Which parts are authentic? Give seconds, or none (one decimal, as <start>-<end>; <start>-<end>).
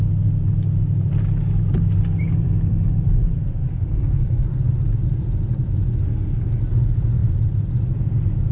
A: 0.0-3.7; 4.5-6.1; 6.6-8.5